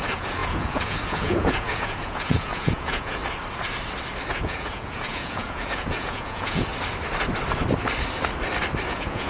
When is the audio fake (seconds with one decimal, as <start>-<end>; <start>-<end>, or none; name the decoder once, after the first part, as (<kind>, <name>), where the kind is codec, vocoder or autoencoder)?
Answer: 0.0-3.2 (vocoder, Vocos); 4.3-6.7; 8.9-9.3